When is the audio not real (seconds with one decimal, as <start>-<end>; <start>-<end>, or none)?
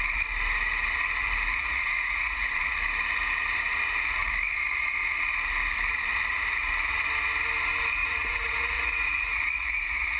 1.6-2.5; 8.0-10.2